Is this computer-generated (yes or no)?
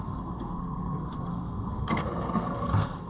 yes